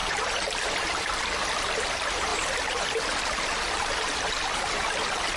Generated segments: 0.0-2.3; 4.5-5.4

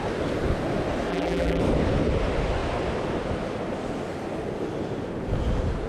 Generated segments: 1.1-1.6

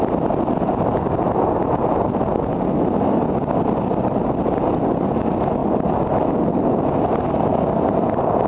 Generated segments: none

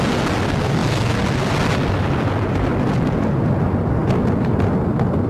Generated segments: none

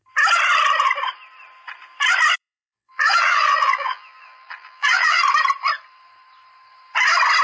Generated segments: 2.4-5.2